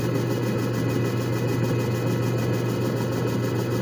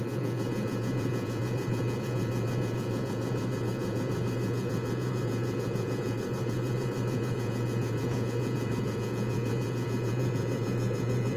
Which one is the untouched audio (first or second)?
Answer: first